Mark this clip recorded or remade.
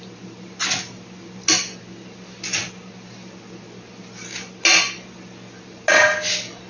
recorded